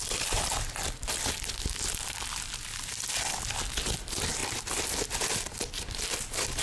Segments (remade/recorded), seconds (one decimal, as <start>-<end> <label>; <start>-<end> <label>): 0.0-6.6 recorded